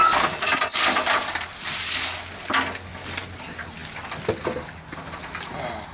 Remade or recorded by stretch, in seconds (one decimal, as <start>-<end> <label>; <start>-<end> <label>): 0.0-5.9 recorded